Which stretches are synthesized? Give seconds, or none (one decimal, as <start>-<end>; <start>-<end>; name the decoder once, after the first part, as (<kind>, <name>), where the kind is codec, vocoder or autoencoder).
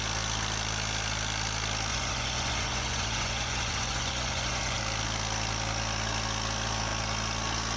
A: 1.9-4.8 (vocoder, Vocos)